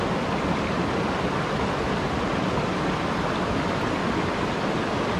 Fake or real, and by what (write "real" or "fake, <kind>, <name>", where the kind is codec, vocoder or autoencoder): real